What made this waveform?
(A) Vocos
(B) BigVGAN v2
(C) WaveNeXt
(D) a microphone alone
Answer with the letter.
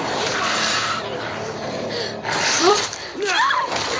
B